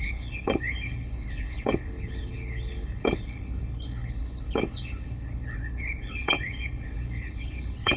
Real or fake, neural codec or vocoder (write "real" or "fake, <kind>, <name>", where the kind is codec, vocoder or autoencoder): fake, codec, HILCodec